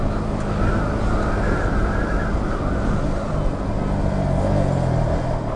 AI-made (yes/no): no